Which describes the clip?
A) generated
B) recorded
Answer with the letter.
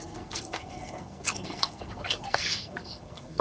A